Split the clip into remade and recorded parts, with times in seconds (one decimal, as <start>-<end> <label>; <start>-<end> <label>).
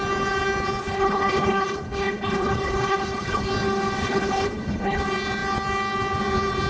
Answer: 0.0-0.8 recorded; 0.8-3.5 remade; 3.5-4.0 recorded; 4.0-5.0 remade; 5.0-6.7 recorded